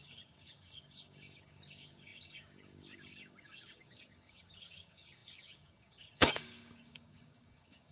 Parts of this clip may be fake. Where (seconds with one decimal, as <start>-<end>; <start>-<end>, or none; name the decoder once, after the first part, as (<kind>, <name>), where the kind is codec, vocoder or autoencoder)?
0.0-7.9 (codec, DAC)